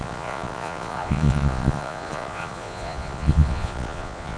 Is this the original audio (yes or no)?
no